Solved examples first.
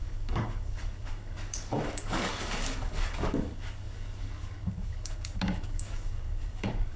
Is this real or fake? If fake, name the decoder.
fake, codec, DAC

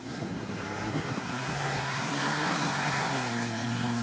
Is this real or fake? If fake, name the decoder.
fake, codec, SNAC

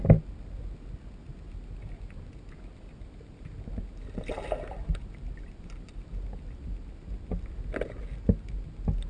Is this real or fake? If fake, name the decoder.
real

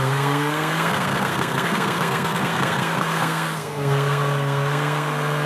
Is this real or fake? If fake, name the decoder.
fake, codec, SNAC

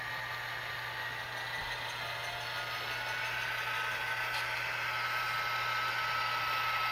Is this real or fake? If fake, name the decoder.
real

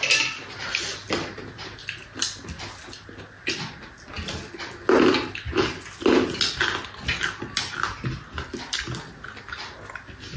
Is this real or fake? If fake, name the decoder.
real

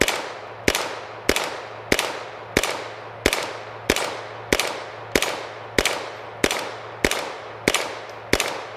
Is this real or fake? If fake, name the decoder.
real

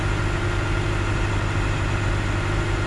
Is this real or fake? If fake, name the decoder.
real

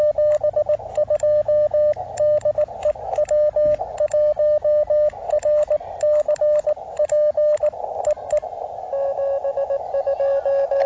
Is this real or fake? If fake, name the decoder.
real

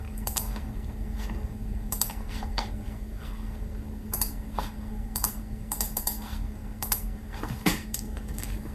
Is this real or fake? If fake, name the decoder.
fake, codec, SNAC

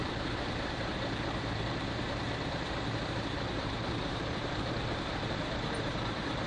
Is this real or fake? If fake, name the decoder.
fake, vocoder, BigVGAN v2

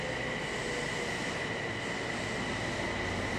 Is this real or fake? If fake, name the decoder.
real